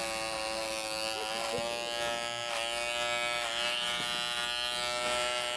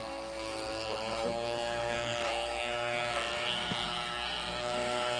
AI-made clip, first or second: second